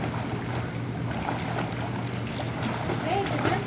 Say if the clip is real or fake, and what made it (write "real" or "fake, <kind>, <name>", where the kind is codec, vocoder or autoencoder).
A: real